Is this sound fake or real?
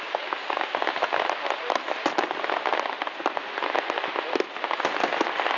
real